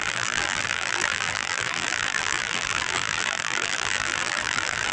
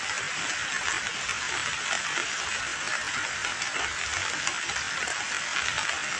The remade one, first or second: first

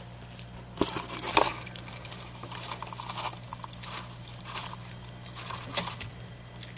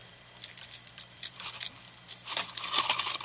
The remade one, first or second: second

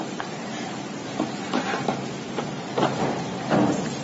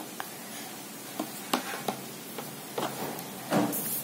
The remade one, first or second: first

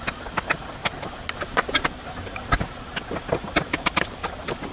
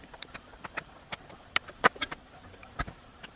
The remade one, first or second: second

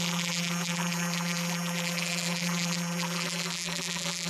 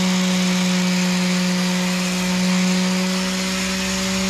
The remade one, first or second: first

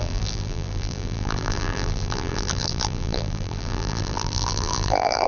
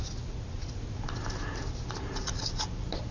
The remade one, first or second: first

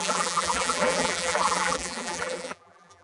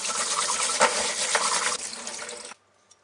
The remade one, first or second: first